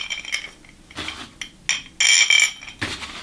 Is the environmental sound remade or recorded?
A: recorded